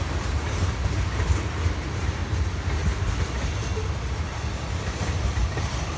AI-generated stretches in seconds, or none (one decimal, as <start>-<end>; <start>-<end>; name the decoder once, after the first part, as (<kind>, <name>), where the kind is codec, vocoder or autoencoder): 0.0-2.2 (vocoder, BigVGAN v2); 4.7-6.0